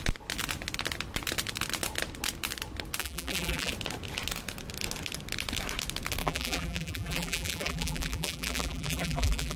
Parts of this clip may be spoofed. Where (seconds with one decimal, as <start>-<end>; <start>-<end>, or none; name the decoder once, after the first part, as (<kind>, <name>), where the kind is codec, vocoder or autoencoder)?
3.0-3.7 (vocoder, BigVGAN v2); 6.2-9.6